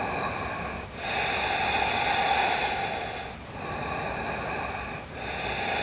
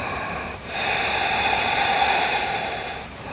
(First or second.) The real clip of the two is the first